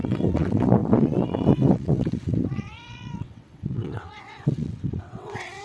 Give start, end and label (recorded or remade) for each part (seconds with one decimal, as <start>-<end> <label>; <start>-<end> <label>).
0.0-5.6 remade